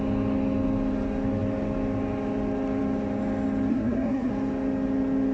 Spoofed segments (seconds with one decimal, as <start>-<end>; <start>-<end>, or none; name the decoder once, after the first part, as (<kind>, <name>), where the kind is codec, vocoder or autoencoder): 3.7-4.3 (codec, SNAC)